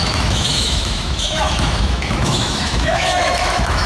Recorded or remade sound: remade